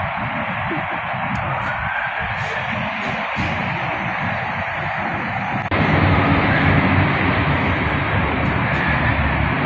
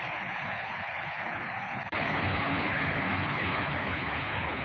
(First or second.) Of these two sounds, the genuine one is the first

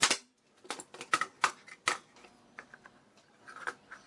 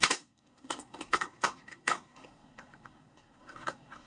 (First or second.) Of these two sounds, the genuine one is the first